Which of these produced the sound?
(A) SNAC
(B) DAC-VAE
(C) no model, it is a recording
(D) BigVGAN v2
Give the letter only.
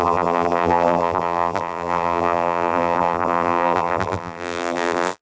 D